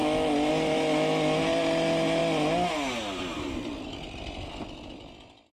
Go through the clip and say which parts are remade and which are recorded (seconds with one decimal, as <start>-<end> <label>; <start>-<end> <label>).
0.0-5.6 recorded